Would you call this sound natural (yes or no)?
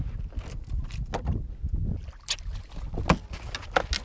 yes